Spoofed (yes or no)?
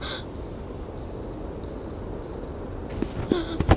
no